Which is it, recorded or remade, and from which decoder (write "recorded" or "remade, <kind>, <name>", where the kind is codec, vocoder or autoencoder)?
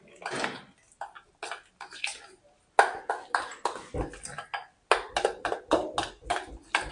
recorded